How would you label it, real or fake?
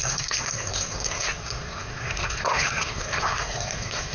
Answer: fake